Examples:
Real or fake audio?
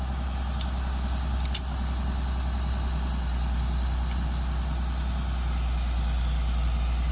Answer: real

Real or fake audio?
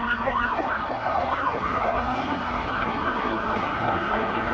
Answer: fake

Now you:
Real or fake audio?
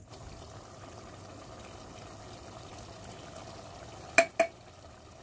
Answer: real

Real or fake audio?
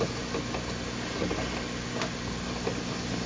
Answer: real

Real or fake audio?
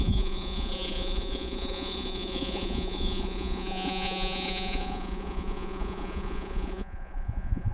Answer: fake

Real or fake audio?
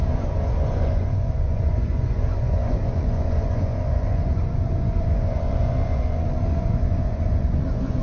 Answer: fake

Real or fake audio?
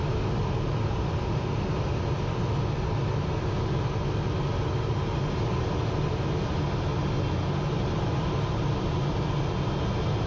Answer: real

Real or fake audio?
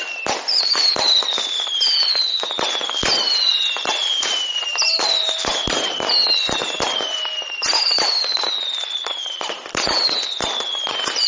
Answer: real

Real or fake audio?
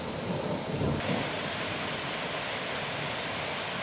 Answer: real